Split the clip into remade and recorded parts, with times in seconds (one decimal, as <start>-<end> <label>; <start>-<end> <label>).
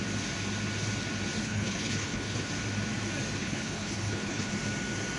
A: 0.0-1.4 recorded; 1.4-2.5 remade; 2.5-3.4 recorded; 3.4-4.5 remade; 4.5-5.2 recorded